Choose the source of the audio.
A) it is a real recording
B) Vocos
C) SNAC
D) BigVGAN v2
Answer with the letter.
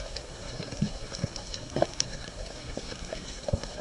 C